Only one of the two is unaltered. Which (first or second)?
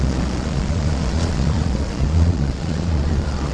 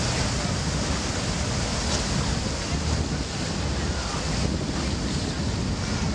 second